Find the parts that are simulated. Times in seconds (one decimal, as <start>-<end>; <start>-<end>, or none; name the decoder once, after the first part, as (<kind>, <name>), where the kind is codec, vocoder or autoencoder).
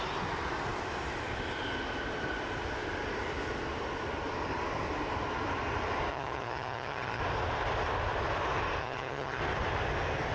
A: 6.1-7.2 (vocoder, HiFi-GAN); 8.8-9.4